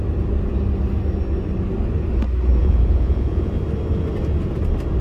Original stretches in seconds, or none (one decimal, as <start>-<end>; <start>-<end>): 0.0-2.6; 3.5-5.0